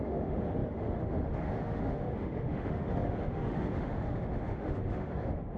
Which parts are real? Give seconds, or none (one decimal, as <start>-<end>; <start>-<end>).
none